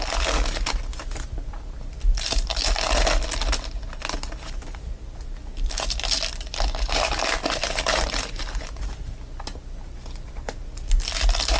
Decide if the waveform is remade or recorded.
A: recorded